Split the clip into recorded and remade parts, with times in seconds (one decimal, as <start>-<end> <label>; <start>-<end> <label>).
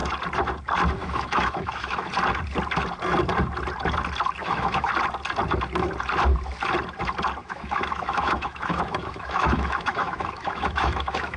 0.0-1.0 recorded; 1.0-2.1 remade; 2.1-4.4 recorded; 4.4-4.9 remade; 4.9-7.4 recorded; 7.4-11.4 remade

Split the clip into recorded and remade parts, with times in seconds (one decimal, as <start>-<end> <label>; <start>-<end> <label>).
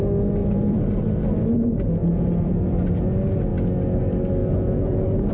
0.0-0.4 recorded; 0.4-1.0 remade; 1.0-2.0 recorded; 2.0-2.9 remade; 2.9-4.4 recorded; 4.4-5.3 remade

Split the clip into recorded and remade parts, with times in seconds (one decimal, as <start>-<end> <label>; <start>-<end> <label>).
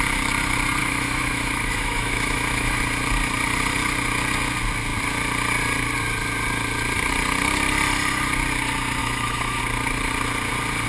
0.0-0.8 recorded; 0.8-2.8 remade; 2.8-9.0 recorded; 9.0-9.6 remade; 9.6-10.9 recorded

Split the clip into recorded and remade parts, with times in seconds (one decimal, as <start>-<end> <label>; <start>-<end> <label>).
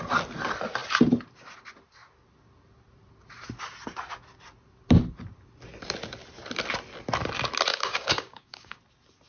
0.0-7.7 recorded; 7.7-8.8 remade; 8.8-9.3 recorded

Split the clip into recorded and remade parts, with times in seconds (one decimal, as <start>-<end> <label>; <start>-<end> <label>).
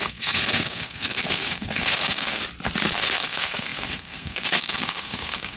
0.0-2.4 remade; 2.4-2.9 recorded; 2.9-5.6 remade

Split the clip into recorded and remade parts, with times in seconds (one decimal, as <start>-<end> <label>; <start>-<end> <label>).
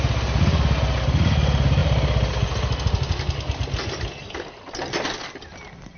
0.0-6.0 recorded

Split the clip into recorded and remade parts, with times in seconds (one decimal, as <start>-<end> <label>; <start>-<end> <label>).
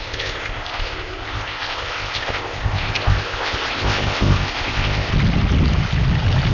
0.0-5.1 remade; 5.1-6.5 recorded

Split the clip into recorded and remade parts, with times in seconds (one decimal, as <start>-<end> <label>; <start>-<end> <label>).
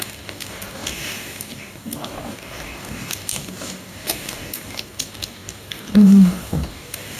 0.0-7.2 remade